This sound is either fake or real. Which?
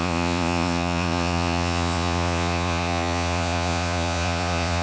fake